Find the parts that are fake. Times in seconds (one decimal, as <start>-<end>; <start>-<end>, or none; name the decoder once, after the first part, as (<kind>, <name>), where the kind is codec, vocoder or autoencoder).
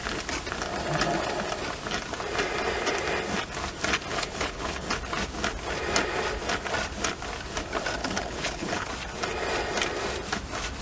4.1-4.9 (codec, HILCodec); 8.0-8.9